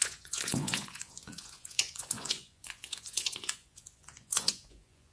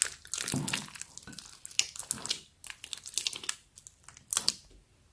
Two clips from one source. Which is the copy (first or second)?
first